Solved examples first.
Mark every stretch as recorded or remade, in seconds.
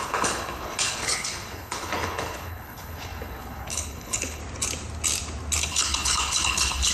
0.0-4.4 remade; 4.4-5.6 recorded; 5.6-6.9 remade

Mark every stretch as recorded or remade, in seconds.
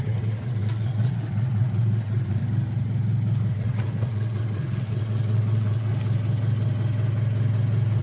0.0-2.4 remade; 2.4-3.5 recorded; 3.5-5.9 remade; 5.9-8.0 recorded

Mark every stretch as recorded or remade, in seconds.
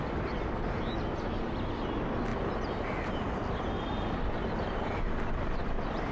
0.0-2.3 recorded; 2.3-6.1 remade